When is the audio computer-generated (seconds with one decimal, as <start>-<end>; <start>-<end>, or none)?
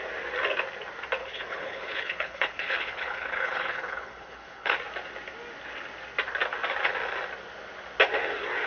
1.2-4.7